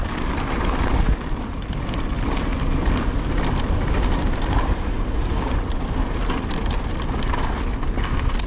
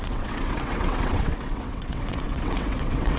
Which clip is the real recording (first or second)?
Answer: first